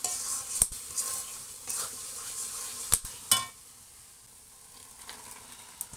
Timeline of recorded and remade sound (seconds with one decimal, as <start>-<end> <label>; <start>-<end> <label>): 0.0-1.3 recorded; 1.3-2.3 remade; 2.3-6.0 recorded